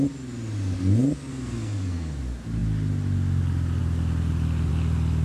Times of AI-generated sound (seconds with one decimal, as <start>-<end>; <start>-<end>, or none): 1.3-2.2